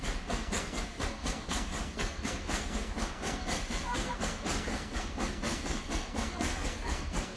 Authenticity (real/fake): fake